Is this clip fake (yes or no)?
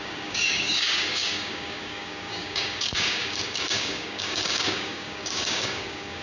yes